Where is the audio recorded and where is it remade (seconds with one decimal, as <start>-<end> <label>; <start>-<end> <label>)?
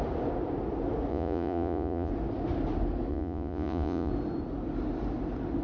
0.0-1.1 recorded; 1.1-2.1 remade; 2.1-3.1 recorded; 3.1-4.1 remade; 4.1-5.6 recorded